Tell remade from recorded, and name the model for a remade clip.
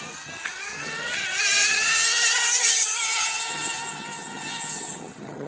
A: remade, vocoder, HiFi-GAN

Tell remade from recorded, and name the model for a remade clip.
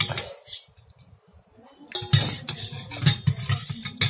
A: recorded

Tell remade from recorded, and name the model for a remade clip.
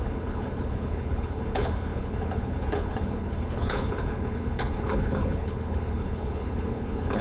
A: remade, codec, HILCodec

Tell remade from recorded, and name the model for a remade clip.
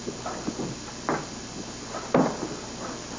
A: recorded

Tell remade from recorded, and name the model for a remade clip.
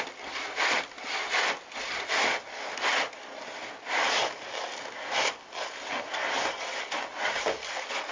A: recorded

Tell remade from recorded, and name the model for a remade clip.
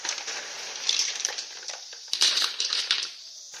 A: remade, vocoder, BigVGAN v2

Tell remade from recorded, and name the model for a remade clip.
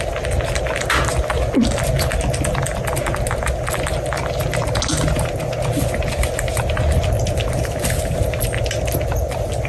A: recorded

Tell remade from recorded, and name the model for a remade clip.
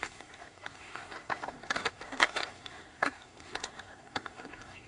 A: remade, codec, SNAC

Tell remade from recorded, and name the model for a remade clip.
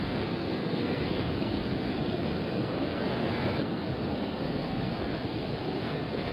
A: remade, codec, SNAC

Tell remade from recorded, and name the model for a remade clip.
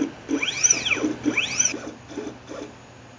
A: recorded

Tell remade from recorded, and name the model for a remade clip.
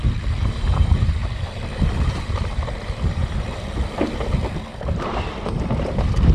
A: remade, vocoder, BigVGAN v2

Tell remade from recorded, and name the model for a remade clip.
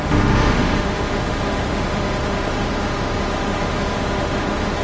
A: remade, autoencoder, DAC-VAE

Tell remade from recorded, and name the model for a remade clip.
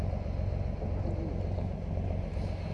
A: recorded